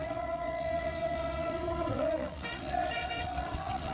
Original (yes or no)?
no